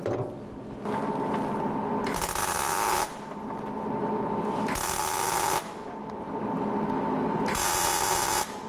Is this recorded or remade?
recorded